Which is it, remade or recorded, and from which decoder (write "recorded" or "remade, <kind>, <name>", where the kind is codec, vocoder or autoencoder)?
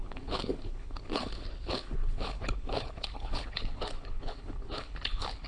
remade, codec, HILCodec